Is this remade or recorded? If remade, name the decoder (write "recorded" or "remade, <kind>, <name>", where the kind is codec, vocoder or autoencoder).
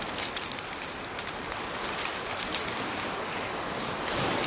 recorded